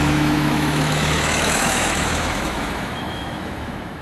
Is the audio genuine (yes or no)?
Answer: no